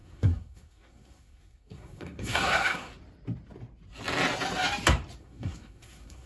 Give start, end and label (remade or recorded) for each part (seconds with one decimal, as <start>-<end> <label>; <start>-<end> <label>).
0.0-2.9 remade; 2.9-5.2 recorded; 5.2-6.3 remade